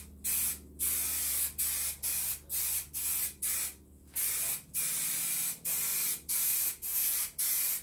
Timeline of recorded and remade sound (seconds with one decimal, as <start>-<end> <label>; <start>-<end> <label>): 0.0-7.8 recorded